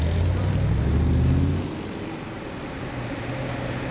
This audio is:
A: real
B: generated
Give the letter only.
A